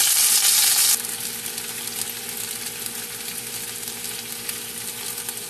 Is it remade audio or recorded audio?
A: recorded